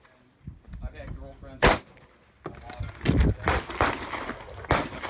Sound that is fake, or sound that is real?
real